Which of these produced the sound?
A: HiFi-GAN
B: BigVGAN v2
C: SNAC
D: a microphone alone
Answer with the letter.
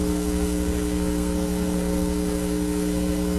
C